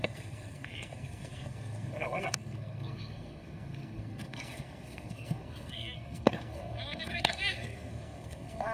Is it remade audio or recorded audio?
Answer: remade